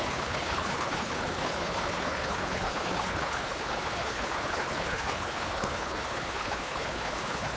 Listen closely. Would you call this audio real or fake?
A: fake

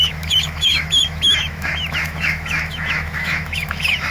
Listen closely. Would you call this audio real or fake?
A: fake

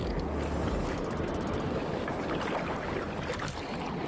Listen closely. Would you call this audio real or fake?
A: real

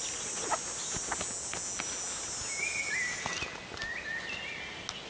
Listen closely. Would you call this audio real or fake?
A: real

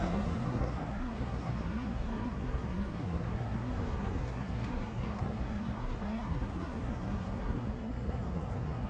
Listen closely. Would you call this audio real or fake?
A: fake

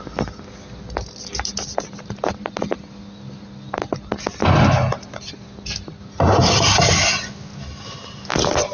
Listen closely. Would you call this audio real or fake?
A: real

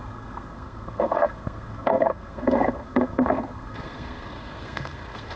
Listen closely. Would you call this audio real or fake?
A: fake